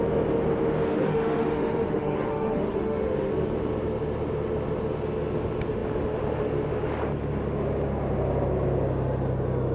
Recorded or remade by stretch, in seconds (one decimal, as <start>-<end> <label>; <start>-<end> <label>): 0.0-0.9 recorded; 0.9-3.3 remade; 3.3-9.7 recorded